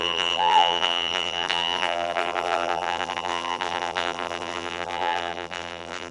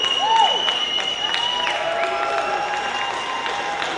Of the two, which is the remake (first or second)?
first